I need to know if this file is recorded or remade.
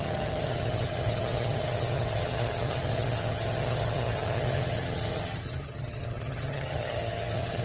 remade